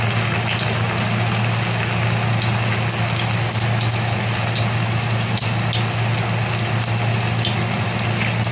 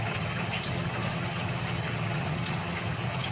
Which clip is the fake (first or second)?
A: second